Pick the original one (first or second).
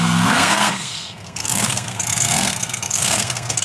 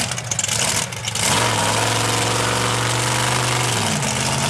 second